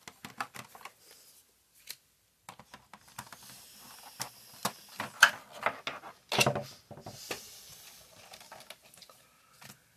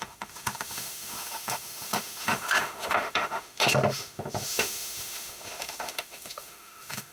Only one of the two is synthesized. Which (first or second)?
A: second